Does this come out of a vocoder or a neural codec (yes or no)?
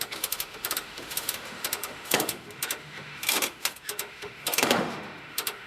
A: yes